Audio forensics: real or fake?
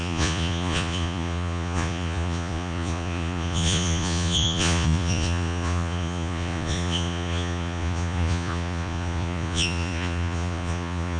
fake